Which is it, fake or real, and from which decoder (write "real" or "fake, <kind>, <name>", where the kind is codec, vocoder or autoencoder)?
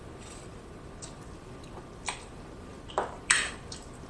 fake, vocoder, BigVGAN v2